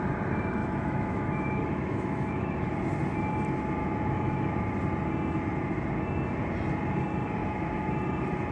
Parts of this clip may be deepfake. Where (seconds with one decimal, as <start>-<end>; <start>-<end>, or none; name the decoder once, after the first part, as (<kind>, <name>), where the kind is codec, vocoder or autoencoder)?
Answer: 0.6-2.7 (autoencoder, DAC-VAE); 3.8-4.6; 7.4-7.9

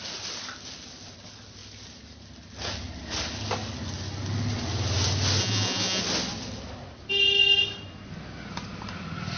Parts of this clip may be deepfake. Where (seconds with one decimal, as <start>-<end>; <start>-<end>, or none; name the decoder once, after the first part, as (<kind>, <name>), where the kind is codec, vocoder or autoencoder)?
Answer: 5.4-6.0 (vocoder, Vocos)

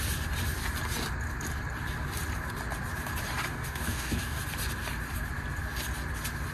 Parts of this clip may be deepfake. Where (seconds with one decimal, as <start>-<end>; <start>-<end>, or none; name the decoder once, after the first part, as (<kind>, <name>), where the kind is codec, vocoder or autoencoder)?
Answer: 3.5-4.4 (codec, DAC)